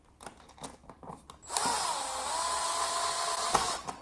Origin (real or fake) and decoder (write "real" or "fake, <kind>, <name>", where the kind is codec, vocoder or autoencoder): real